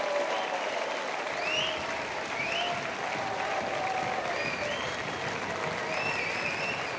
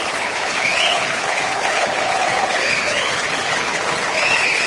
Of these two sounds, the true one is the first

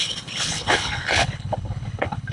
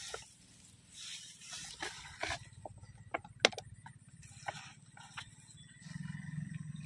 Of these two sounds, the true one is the second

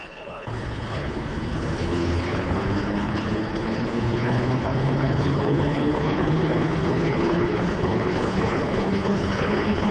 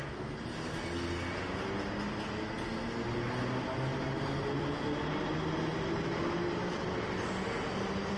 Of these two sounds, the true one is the second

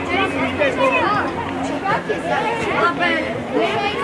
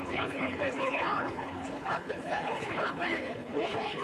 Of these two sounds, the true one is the first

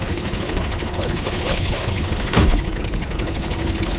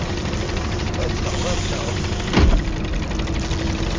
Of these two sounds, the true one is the second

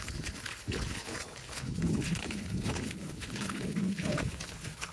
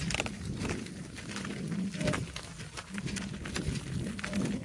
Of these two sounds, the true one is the second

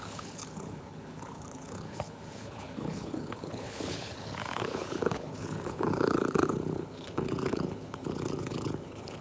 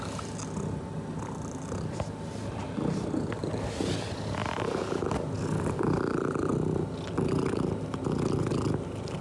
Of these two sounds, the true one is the second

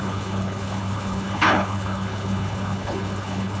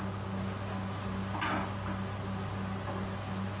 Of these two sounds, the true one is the second